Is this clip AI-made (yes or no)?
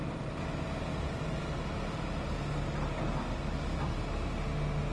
no